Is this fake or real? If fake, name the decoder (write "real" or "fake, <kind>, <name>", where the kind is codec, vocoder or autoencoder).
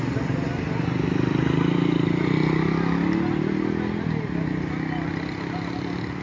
real